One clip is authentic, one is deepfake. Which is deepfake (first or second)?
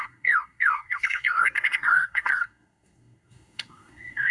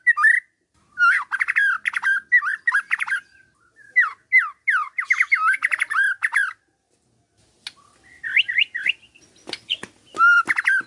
first